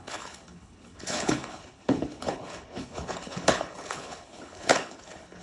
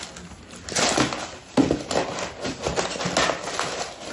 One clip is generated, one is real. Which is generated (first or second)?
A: first